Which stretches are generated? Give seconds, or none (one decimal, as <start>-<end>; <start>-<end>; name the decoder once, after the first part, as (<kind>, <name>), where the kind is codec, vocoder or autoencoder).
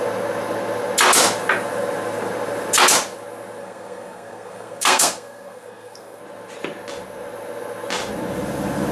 3.6-6.2 (codec, SNAC)